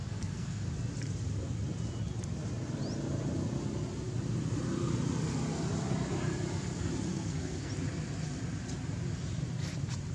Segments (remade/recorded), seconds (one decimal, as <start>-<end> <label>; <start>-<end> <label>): 0.0-0.7 remade; 0.7-7.1 recorded; 7.1-7.7 remade; 7.7-10.1 recorded